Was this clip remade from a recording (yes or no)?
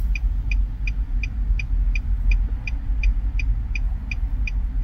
no